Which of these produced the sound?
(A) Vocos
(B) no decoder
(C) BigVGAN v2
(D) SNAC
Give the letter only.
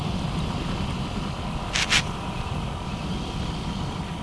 B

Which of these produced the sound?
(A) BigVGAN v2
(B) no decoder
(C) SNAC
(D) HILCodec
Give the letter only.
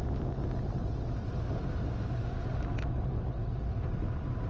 B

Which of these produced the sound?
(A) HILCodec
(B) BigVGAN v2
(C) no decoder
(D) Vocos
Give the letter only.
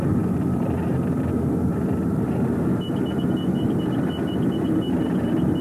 C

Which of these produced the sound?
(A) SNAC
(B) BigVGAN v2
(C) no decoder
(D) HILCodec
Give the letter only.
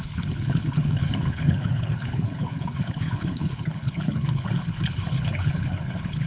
D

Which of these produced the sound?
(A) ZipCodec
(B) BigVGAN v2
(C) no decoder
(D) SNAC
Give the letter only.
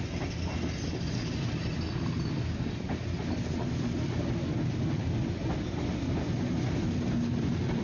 C